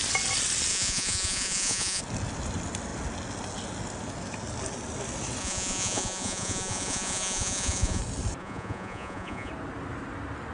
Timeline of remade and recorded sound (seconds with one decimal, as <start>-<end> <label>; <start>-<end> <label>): 0.0-0.7 recorded; 0.7-2.0 remade; 2.0-5.4 recorded; 5.4-8.0 remade; 8.0-8.4 recorded; 8.4-9.5 remade; 9.5-10.5 recorded